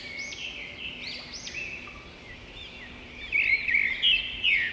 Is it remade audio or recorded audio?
recorded